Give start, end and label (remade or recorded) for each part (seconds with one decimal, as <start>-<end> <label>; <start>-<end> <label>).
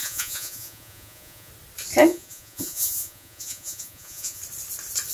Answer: 0.0-1.5 remade; 1.5-2.1 recorded; 2.1-4.4 remade; 4.4-5.1 recorded